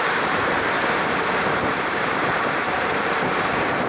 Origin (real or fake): fake